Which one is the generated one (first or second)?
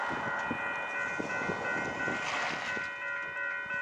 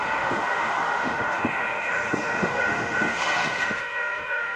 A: second